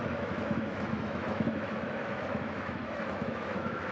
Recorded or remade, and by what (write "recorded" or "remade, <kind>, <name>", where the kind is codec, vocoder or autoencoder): remade, autoencoder, DAC-VAE